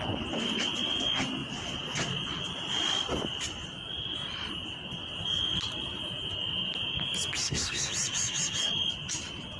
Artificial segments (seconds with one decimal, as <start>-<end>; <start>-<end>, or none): 7.4-7.9